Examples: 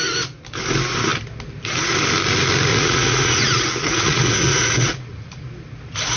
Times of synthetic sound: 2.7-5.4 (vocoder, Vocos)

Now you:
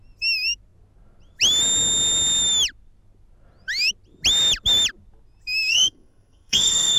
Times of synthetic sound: 5.7-7.0 (codec, SNAC)

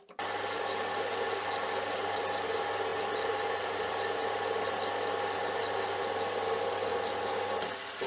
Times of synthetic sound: none

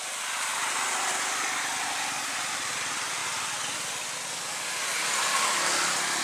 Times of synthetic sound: none